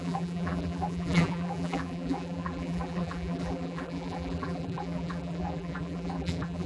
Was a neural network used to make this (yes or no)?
yes